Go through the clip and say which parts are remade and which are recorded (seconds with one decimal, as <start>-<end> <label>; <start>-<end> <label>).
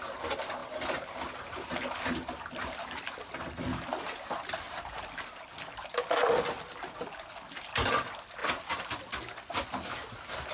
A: 0.0-10.5 recorded